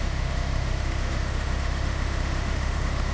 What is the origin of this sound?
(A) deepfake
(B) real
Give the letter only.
A